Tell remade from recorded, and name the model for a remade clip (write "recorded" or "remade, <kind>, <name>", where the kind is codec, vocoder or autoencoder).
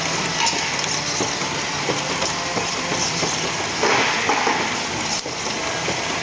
recorded